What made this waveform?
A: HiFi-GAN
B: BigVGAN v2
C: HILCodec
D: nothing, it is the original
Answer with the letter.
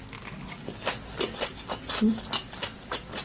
D